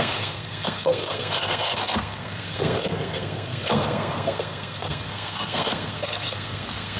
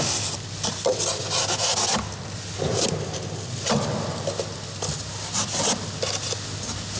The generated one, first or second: first